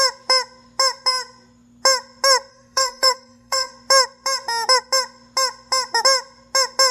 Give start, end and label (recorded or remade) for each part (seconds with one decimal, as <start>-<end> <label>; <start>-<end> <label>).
0.0-2.5 recorded; 2.5-3.7 remade; 3.7-6.9 recorded